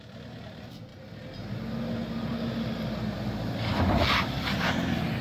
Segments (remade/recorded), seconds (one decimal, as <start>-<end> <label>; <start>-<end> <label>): 0.0-5.2 recorded

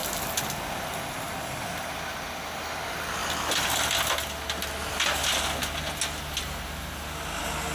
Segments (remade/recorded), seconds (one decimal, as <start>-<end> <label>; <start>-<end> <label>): 0.0-7.7 recorded

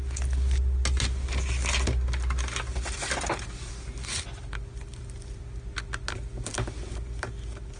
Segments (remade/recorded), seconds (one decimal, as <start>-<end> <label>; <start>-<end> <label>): 0.0-7.8 recorded

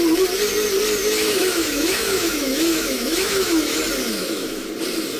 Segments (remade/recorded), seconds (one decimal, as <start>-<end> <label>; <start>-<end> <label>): 0.0-1.0 recorded; 1.0-3.8 remade; 3.8-4.2 recorded; 4.2-4.7 remade; 4.7-5.2 recorded